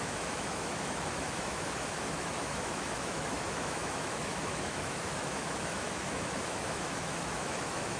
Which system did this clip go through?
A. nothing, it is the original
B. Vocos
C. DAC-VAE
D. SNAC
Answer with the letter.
C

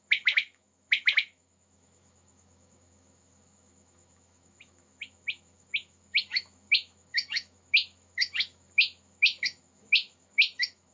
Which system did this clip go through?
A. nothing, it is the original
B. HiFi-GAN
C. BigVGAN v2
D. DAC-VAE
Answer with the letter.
D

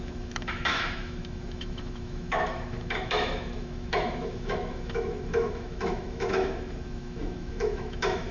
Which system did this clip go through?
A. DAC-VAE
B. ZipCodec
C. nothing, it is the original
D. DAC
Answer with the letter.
A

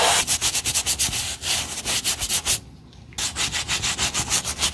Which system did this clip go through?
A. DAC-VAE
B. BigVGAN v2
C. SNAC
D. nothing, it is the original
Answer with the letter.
D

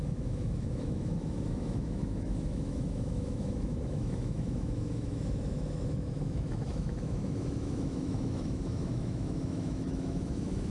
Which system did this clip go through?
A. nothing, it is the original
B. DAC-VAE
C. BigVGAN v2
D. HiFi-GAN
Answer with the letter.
B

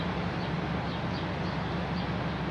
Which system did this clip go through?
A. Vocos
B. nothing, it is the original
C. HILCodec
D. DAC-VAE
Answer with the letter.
B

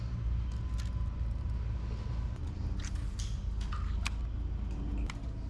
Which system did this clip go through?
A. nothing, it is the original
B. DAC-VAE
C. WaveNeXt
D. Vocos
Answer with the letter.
A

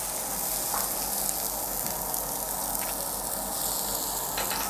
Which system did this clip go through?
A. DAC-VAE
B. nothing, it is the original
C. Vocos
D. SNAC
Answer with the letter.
B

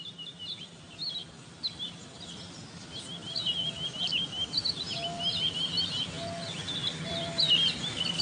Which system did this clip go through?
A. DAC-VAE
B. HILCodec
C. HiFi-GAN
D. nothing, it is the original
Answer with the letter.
D